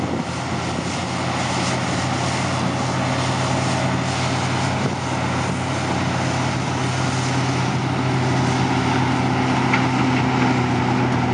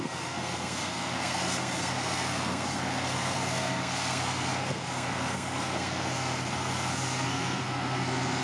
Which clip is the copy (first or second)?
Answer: second